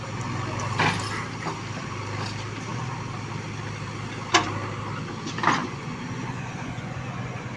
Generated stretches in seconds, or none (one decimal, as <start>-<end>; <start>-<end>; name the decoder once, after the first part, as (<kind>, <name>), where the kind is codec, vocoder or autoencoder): 5.6-7.6 (vocoder, Vocos)